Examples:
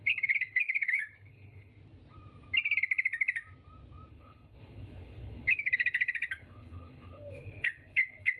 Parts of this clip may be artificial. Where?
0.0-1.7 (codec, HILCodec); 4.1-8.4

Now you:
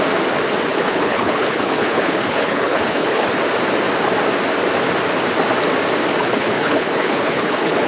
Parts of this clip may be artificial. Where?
0.7-3.3 (codec, HILCodec); 6.2-7.9

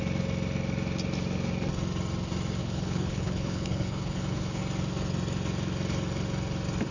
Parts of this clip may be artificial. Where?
2.6-4.6 (codec, HILCodec)

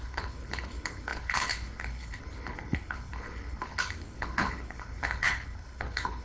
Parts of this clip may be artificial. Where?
0.0-6.2 (codec, HILCodec)

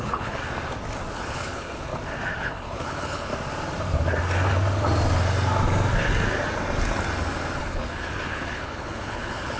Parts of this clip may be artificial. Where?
0.0-0.4 (codec, HILCodec); 1.1-1.9; 2.4-3.3; 7.6-9.6

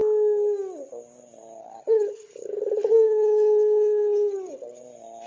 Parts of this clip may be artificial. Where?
1.6-4.8 (codec, HILCodec)